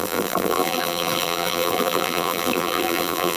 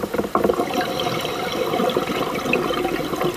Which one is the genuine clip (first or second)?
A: second